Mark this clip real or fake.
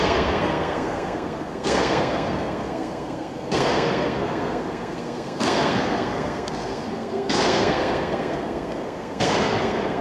fake